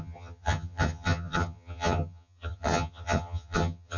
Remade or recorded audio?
remade